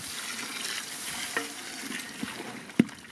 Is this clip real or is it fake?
real